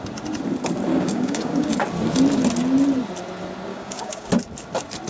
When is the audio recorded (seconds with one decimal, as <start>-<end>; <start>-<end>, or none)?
0.0-0.9; 1.7-3.7; 4.3-5.1